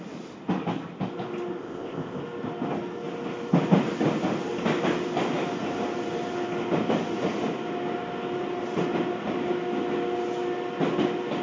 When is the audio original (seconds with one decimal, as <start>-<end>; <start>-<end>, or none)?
0.0-1.6; 2.2-11.4